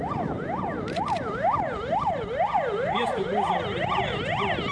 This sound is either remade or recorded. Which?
recorded